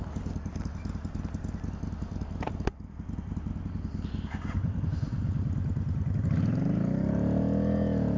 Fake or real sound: real